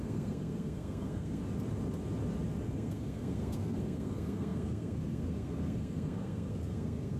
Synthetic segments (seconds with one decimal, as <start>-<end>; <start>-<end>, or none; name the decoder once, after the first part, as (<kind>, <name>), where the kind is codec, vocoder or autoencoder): 0.0-1.4 (codec, SNAC); 2.6-7.2